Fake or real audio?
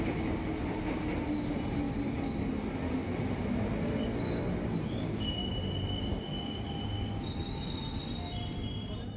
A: real